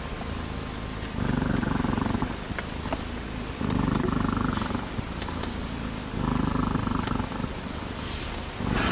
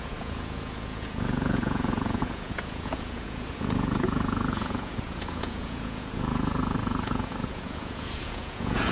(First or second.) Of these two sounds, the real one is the first